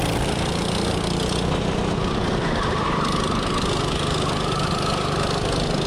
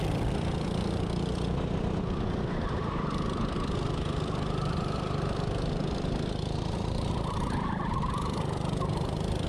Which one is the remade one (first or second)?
second